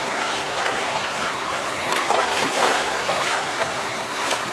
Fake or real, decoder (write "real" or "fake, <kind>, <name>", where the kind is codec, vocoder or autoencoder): fake, codec, SNAC